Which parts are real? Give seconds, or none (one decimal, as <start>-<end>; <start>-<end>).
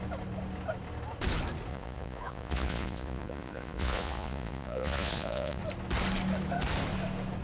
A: 0.0-1.7; 5.6-7.4